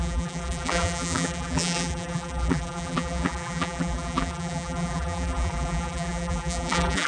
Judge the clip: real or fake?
fake